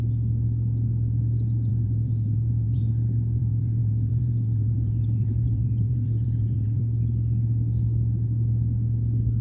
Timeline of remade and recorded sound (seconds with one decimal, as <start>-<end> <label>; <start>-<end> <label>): 0.0-1.7 recorded; 1.7-2.9 remade; 2.9-3.4 recorded; 3.4-6.8 remade; 6.8-9.4 recorded